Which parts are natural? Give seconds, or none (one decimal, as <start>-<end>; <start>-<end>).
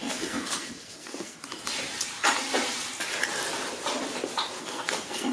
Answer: 1.4-4.6